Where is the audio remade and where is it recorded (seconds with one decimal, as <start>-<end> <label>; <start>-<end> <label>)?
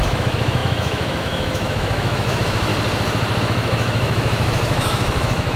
0.0-2.7 remade; 2.7-3.4 recorded; 3.4-5.6 remade